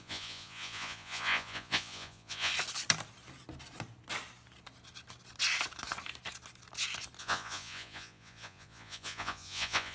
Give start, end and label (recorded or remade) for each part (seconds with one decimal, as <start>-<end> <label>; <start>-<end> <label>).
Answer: 0.0-2.5 remade; 2.5-7.2 recorded; 7.2-9.9 remade